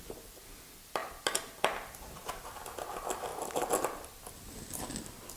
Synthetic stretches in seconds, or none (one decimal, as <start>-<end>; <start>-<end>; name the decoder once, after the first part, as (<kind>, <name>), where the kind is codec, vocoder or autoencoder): none